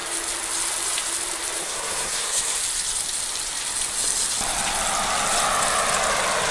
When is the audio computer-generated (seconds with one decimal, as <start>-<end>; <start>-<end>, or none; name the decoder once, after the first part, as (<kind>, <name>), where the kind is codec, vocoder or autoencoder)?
1.6-2.6 (codec, SNAC)